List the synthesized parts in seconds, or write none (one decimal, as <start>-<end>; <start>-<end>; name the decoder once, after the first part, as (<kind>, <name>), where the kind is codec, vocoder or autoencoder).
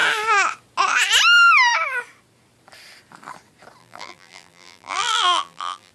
3.8-5.9 (vocoder, BigVGAN v2)